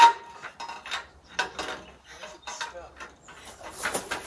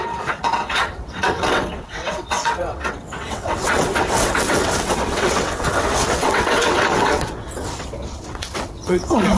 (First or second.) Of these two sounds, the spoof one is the second